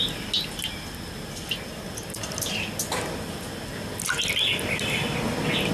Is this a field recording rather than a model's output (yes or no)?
yes